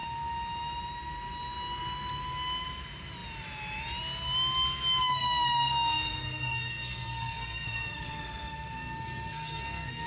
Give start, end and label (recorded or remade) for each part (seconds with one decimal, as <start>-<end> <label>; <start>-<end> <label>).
0.0-5.1 recorded; 5.1-10.1 remade